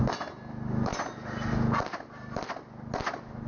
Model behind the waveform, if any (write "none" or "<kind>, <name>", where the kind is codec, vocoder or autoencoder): none